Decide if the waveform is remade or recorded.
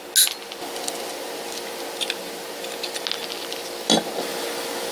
recorded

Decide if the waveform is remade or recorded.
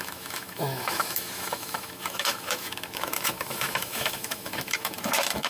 remade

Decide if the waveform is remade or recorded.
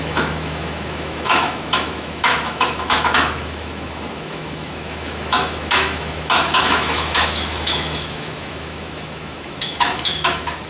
remade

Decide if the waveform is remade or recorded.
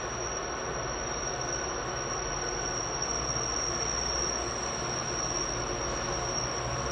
recorded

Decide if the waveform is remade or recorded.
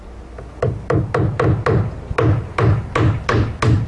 recorded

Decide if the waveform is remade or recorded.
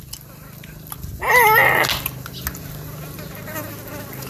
recorded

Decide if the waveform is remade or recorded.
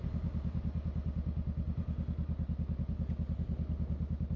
recorded